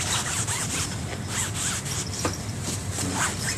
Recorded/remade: recorded